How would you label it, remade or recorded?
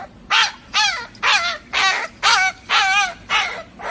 recorded